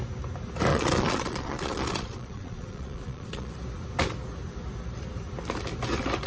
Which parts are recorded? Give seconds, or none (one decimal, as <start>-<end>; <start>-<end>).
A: 0.0-0.7; 3.5-6.3